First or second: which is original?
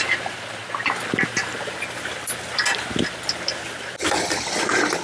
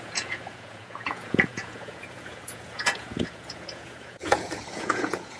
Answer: first